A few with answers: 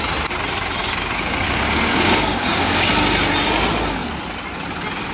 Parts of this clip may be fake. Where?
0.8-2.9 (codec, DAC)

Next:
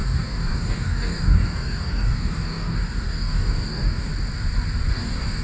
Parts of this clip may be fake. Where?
0.0-4.1 (codec, DAC); 4.9-5.4

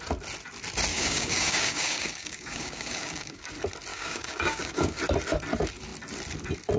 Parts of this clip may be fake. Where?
0.9-3.5 (codec, DAC); 3.9-5.0